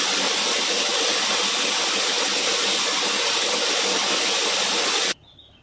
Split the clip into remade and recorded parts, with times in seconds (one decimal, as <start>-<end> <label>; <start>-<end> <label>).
0.0-5.6 recorded